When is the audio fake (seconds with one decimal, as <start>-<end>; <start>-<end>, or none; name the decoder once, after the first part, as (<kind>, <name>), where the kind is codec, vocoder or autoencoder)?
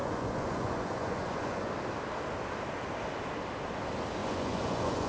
0.0-1.7 (vocoder, Vocos); 4.2-5.1